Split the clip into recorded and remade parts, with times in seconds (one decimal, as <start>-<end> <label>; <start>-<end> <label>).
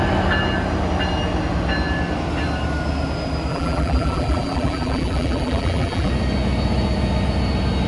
0.0-3.5 recorded; 3.5-6.1 remade; 6.1-7.9 recorded